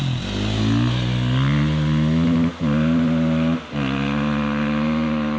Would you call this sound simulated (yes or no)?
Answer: no